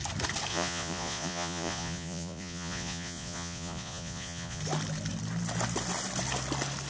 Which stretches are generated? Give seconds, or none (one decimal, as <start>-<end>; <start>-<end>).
0.5-4.6